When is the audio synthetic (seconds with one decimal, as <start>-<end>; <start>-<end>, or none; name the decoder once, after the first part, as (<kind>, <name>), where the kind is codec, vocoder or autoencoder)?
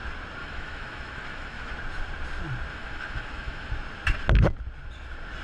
0.4-1.7 (autoencoder, DAC-VAE); 2.7-3.7